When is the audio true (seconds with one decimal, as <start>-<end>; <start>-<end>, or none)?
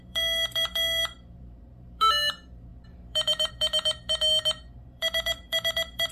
none